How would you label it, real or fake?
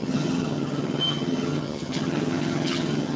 fake